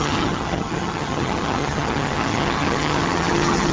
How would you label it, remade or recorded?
remade